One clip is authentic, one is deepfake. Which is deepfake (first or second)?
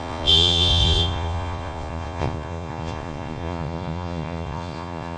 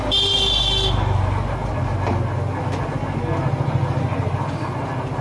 first